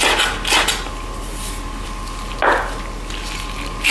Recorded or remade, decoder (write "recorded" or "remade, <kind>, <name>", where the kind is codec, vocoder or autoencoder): recorded